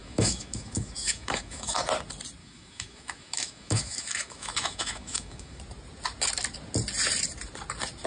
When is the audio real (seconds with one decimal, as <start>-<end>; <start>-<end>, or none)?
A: 1.8-2.4; 5.6-8.1